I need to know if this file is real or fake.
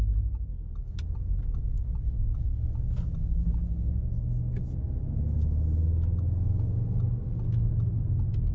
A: real